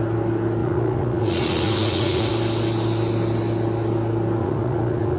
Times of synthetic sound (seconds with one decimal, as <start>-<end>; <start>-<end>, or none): 0.6-2.3; 4.4-5.2